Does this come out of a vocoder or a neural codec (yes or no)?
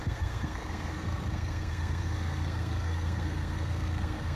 yes